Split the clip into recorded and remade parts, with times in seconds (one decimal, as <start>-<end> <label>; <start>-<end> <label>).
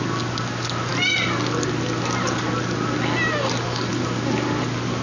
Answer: 0.0-5.0 recorded